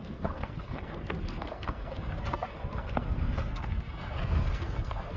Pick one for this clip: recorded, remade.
remade